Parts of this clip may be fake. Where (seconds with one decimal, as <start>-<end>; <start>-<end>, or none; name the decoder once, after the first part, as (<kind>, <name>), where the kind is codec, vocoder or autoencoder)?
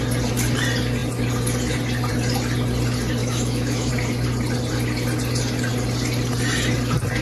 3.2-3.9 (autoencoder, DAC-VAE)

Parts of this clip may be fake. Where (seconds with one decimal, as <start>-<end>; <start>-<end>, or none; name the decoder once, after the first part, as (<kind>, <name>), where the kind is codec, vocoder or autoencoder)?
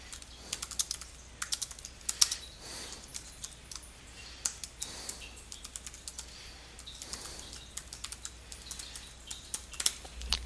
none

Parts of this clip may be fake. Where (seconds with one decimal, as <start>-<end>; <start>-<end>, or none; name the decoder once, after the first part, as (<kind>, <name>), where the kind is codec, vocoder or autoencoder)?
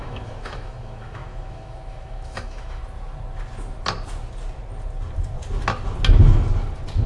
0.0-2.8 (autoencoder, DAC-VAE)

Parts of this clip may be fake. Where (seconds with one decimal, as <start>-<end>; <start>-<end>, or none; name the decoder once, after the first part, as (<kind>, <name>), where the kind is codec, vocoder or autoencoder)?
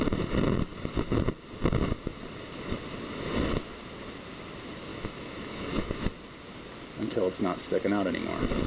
4.9-6.1 (autoencoder, DAC-VAE)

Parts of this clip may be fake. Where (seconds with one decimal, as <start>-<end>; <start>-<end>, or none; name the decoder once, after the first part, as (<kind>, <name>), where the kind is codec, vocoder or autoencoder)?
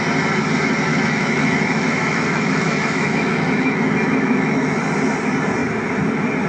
0.9-4.8 (autoencoder, DAC-VAE)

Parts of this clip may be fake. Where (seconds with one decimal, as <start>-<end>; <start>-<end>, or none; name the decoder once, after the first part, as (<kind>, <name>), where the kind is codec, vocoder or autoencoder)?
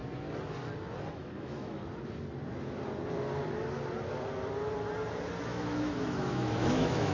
1.1-1.8 (autoencoder, DAC-VAE); 5.4-7.1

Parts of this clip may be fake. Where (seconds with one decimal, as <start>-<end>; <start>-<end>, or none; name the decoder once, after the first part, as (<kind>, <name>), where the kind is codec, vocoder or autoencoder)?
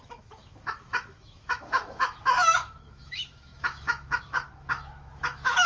0.0-5.7 (autoencoder, DAC-VAE)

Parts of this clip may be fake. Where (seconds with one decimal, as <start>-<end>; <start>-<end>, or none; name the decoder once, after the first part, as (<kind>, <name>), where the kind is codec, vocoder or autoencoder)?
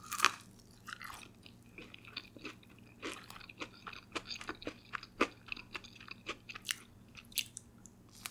none